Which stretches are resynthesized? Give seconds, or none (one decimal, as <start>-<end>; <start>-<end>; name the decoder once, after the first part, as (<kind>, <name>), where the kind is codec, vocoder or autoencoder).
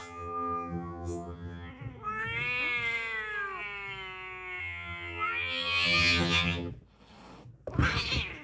0.0-1.7 (vocoder, HiFi-GAN); 4.6-6.7